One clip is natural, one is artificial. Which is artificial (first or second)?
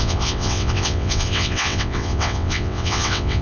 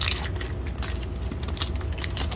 first